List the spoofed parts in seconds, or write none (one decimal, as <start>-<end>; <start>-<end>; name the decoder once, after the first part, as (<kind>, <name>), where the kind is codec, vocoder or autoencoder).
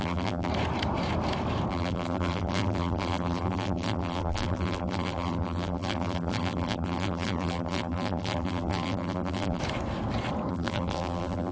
0.0-0.5 (vocoder, BigVGAN v2); 1.7-9.6; 10.5-11.5